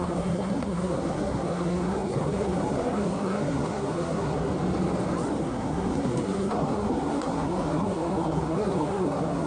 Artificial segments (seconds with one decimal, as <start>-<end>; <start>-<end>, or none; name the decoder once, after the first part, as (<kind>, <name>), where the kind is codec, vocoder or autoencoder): 0.0-4.5 (codec, SNAC); 5.4-9.5